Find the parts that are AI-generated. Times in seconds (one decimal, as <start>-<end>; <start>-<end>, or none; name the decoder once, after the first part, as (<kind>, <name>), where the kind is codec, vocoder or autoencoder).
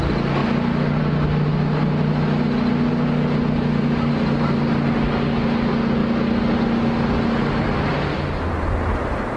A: none